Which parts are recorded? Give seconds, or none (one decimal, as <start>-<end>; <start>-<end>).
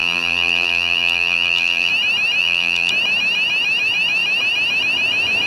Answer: 1.9-2.4; 2.9-5.5